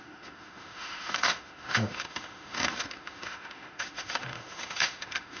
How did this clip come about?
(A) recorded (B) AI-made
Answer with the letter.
B